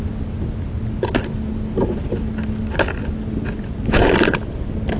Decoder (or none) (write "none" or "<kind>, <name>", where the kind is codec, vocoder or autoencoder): none